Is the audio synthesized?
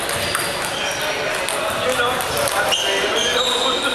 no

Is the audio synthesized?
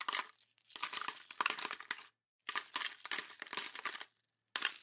no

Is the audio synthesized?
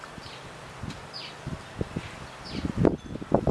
no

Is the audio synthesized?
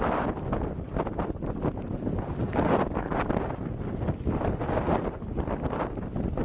no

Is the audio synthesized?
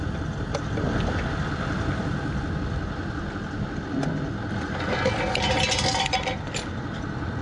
no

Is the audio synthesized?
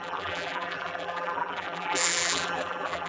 yes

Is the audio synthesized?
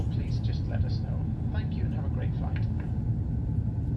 no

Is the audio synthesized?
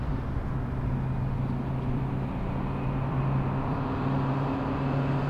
yes